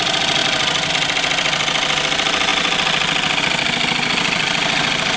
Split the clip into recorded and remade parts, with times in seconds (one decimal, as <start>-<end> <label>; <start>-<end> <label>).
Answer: 0.0-5.2 recorded